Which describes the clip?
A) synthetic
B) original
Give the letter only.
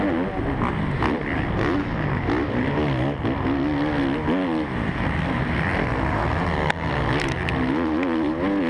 B